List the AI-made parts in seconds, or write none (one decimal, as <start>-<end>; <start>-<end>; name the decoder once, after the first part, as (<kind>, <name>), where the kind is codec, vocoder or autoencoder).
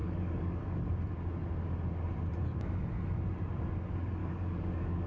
0.0-0.8 (codec, DAC); 4.2-5.1